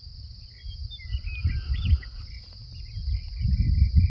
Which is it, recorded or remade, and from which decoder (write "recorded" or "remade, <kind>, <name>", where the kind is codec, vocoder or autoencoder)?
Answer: recorded